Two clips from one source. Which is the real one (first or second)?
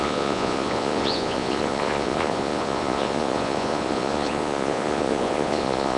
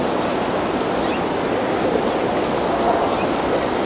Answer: second